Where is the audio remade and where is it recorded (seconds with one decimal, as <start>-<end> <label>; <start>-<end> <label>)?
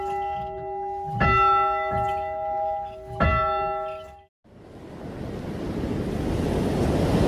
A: 0.0-7.3 recorded